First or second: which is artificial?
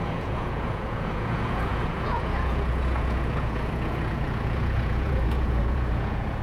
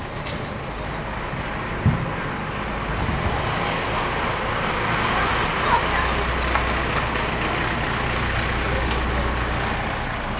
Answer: first